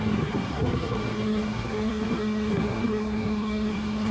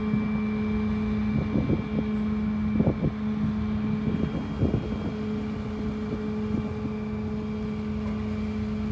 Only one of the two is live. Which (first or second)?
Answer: second